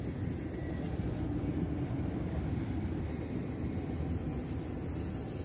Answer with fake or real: real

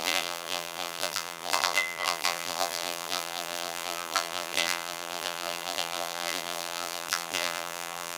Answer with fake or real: fake